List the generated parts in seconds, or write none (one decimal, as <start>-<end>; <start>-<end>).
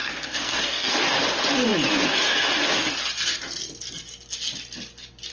0.0-0.9